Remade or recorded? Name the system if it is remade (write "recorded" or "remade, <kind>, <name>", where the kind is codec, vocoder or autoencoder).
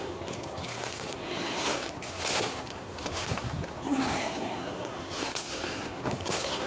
remade, codec, SNAC